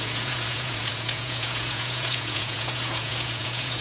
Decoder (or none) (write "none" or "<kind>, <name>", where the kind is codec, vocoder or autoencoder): vocoder, Vocos